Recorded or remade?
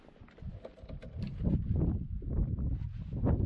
recorded